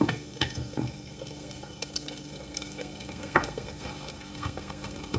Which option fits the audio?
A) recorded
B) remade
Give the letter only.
B